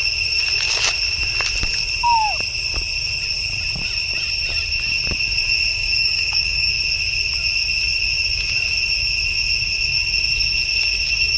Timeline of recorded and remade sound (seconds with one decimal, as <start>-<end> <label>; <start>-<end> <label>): 0.0-5.7 recorded; 5.7-6.7 remade; 6.7-11.4 recorded